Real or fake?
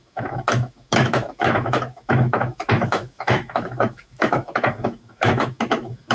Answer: fake